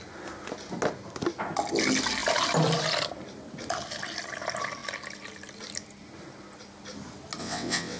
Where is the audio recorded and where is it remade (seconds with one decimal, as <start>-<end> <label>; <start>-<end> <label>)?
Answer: 0.0-7.4 recorded; 7.4-8.0 remade